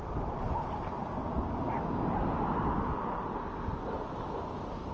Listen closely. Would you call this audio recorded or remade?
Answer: recorded